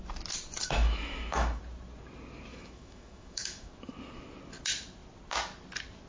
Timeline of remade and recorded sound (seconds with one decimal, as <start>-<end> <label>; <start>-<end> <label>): 0.0-0.6 recorded; 0.6-1.6 remade; 1.6-2.5 recorded; 2.5-3.7 remade; 3.7-6.1 recorded